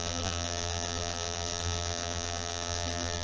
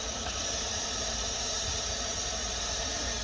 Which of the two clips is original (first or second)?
second